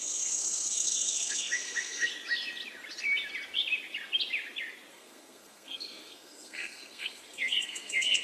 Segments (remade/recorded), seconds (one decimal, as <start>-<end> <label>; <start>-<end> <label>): 0.0-2.1 remade; 2.1-4.9 recorded; 4.9-8.2 remade